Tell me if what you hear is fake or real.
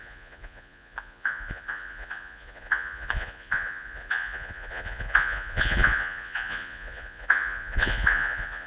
fake